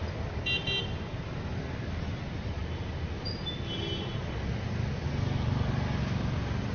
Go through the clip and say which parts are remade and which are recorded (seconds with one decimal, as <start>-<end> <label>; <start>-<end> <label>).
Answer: 0.0-6.7 recorded